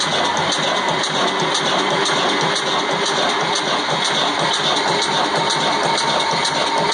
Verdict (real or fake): real